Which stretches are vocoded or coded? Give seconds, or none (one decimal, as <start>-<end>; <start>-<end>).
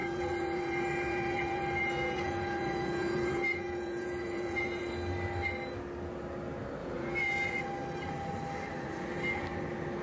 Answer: 0.0-4.9; 6.8-7.6